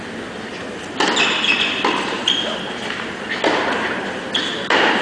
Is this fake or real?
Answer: real